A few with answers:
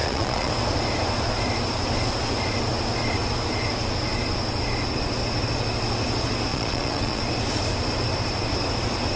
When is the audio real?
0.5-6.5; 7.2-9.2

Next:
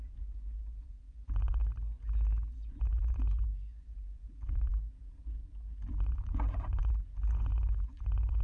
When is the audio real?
1.6-2.8; 4.7-5.9

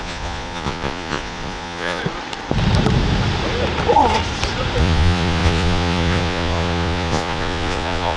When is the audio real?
2.0-4.8